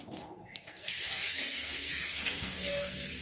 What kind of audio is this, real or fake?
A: fake